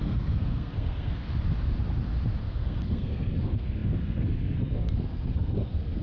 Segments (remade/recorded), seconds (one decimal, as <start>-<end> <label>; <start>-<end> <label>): 0.0-1.3 remade; 1.3-2.4 recorded; 2.4-6.0 remade